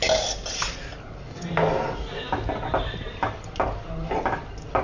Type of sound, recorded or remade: recorded